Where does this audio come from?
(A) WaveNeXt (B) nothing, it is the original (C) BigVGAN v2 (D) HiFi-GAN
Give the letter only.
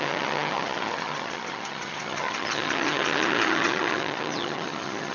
D